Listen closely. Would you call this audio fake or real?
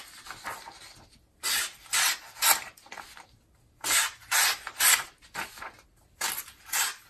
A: real